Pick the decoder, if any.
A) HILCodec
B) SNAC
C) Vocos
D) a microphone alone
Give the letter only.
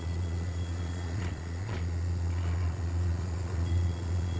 C